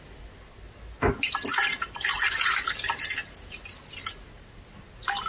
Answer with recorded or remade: recorded